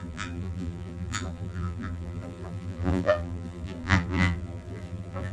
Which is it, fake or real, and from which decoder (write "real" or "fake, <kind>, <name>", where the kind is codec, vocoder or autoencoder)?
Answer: fake, vocoder, BigVGAN v2